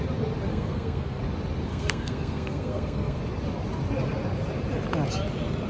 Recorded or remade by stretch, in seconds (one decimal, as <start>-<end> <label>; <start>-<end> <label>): 0.0-0.5 recorded; 0.5-1.2 remade; 1.2-1.7 recorded; 1.7-3.2 remade; 3.2-5.7 recorded